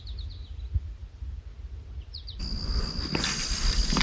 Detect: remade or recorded recorded